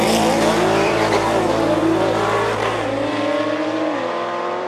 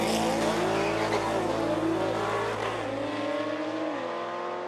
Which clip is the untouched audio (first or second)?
second